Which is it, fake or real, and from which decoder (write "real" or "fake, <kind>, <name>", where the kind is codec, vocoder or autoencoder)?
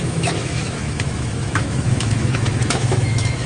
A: fake, autoencoder, DAC-VAE